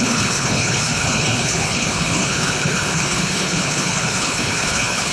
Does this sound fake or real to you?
fake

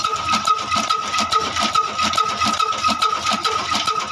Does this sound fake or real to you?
real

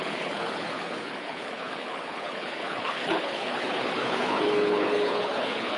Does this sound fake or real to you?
fake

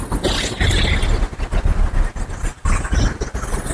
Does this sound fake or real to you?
real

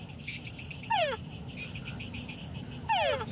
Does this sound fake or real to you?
real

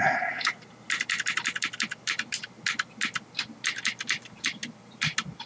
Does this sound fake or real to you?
real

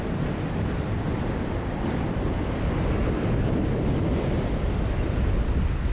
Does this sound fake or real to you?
real